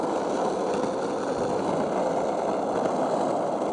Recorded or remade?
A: recorded